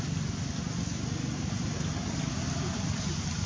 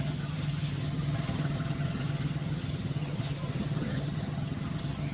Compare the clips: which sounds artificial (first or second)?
second